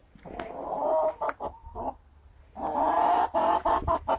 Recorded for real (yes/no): yes